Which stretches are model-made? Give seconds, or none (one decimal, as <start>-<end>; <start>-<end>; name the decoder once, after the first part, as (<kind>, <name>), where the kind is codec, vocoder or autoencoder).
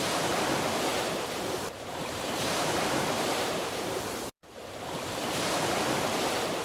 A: 0.9-3.8 (vocoder, BigVGAN v2); 5.2-6.6